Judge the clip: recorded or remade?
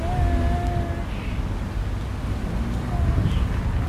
recorded